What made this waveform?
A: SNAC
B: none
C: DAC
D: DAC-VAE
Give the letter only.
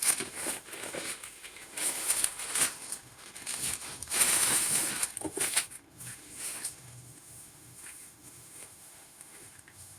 D